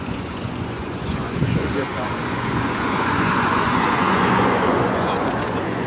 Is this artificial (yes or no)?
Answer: yes